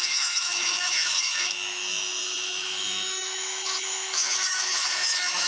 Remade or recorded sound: remade